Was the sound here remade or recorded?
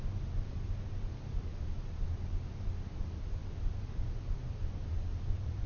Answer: recorded